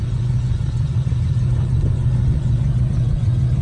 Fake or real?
fake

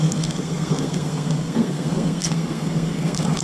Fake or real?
fake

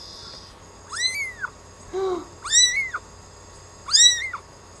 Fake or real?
real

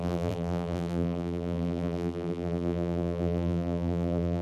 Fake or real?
fake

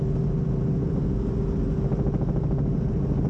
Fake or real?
real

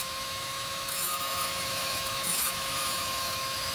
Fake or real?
fake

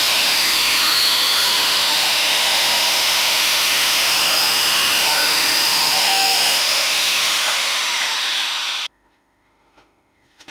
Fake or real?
fake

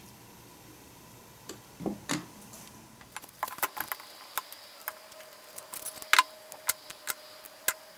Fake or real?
real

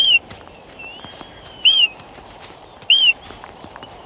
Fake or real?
fake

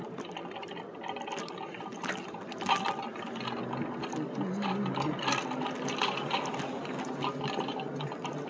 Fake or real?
real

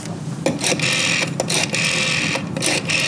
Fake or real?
real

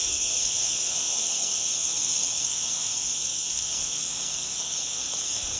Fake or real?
fake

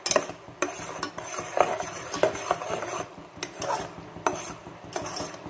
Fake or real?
real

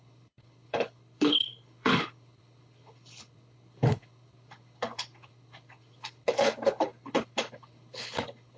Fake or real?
fake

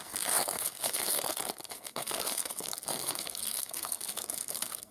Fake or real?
fake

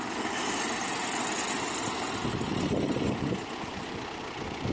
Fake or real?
real